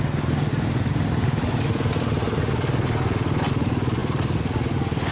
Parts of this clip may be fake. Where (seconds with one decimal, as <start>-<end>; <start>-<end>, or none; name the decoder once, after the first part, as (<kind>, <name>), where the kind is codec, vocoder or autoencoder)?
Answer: none